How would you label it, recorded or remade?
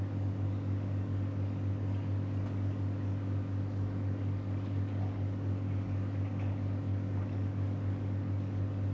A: remade